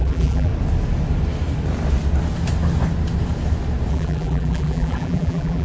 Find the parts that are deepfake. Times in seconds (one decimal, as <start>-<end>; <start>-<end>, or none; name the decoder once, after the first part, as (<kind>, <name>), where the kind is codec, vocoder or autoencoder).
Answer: 0.0-0.5 (vocoder, BigVGAN v2); 3.9-5.6